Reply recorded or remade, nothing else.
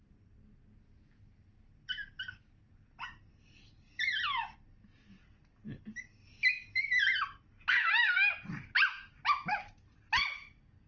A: recorded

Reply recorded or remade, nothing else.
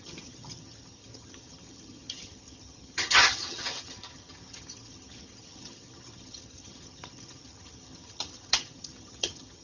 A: remade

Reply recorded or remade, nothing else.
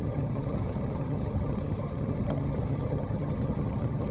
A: remade